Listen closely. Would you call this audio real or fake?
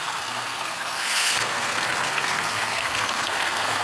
fake